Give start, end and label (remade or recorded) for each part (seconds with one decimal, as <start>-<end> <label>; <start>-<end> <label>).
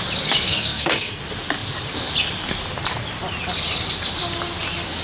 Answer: 0.0-0.5 recorded; 0.5-1.2 remade; 1.2-5.0 recorded